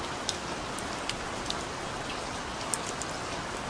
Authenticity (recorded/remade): recorded